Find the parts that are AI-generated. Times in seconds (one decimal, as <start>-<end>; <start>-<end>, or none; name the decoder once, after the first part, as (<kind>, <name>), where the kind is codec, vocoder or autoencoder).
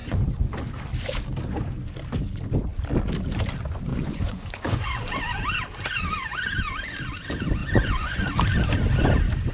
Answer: 0.0-0.5 (vocoder, Vocos); 3.9-5.4; 7.6-8.2